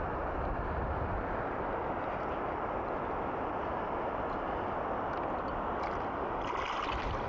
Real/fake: real